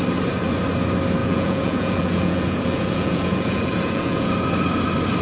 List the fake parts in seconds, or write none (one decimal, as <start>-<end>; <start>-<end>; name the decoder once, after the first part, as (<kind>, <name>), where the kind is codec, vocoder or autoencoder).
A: 1.2-4.3 (vocoder, Vocos)